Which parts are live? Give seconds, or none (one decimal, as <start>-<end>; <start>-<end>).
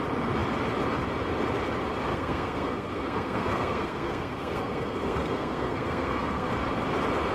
0.0-2.1; 6.5-7.3